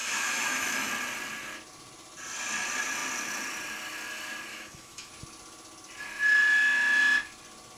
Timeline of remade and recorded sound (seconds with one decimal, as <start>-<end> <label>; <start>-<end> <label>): 0.0-0.9 remade; 0.9-4.5 recorded; 4.5-5.1 remade; 5.1-7.8 recorded

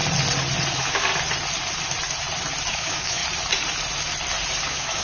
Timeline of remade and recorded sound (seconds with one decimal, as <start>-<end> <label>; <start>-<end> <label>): 0.0-0.7 recorded; 0.7-1.1 remade; 1.1-2.7 recorded; 2.7-3.2 remade; 3.2-4.6 recorded; 4.6-5.0 remade